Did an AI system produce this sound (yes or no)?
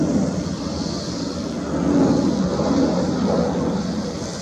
no